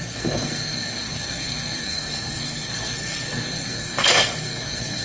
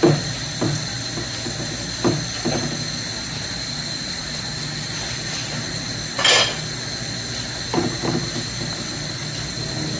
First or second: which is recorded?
second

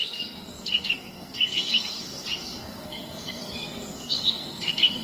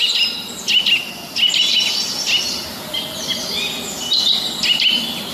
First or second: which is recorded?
second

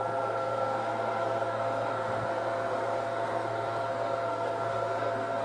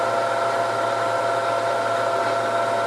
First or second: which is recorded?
second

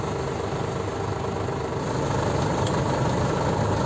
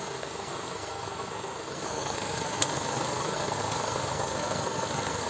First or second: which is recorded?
first